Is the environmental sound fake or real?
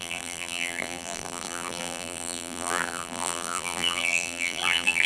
fake